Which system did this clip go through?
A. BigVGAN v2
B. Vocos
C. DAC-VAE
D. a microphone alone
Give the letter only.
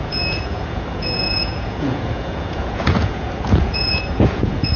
B